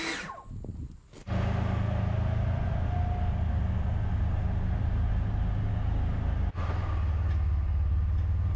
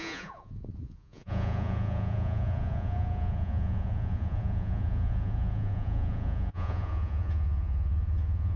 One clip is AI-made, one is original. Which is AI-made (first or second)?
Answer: second